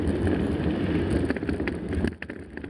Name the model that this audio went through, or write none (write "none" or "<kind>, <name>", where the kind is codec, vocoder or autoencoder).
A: none